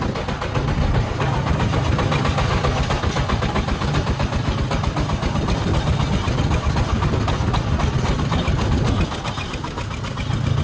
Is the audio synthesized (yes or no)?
no